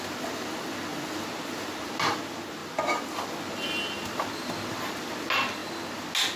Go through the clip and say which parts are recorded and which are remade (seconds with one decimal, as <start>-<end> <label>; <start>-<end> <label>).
0.0-6.4 recorded